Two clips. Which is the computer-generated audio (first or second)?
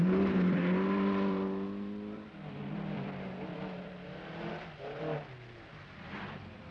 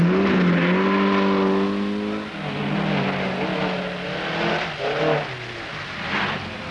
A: first